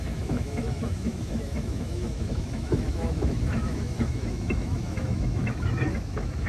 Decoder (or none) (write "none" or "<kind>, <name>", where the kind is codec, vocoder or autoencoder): autoencoder, DAC-VAE